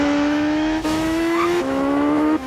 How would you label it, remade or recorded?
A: remade